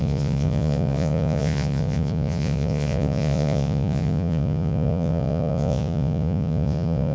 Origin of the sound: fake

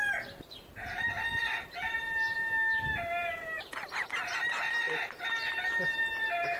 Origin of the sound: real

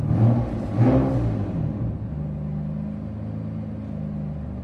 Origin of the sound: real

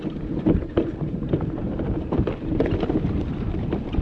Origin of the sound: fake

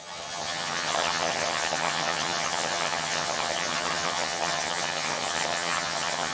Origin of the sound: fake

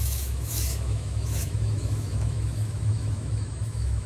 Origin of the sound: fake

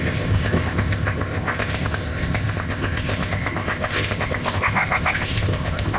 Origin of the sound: fake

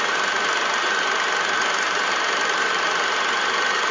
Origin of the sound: real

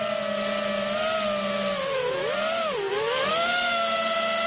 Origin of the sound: real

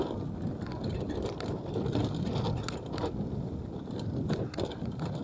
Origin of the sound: real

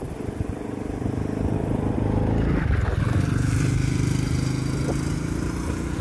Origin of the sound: real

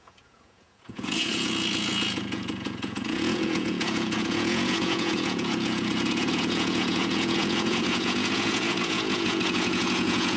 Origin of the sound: fake